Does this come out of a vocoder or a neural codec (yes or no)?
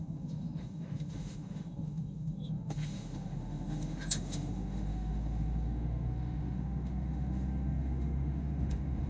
yes